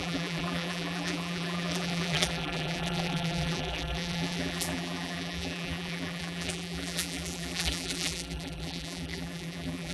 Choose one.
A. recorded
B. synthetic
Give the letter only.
B